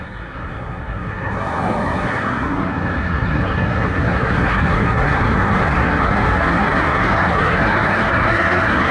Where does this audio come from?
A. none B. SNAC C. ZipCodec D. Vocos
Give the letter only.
B